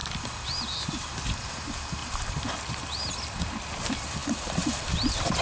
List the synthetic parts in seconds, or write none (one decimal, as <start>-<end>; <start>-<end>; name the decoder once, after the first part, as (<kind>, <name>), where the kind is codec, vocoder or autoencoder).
0.0-2.0 (vocoder, BigVGAN v2); 3.2-4.2